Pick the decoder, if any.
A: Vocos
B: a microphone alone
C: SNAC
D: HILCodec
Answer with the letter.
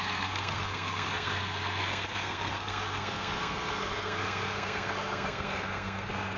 C